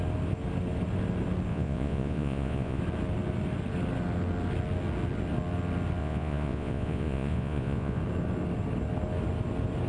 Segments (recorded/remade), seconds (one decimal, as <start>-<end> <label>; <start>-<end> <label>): 0.0-1.5 recorded; 1.5-2.8 remade; 2.8-6.0 recorded; 6.0-8.0 remade; 8.0-9.9 recorded